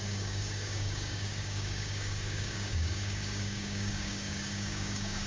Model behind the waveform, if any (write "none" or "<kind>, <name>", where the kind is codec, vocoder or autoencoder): codec, DAC